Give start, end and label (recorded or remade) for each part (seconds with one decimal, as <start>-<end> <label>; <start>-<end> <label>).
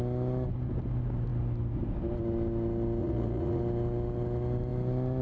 0.0-3.0 recorded; 3.0-3.6 remade; 3.6-5.2 recorded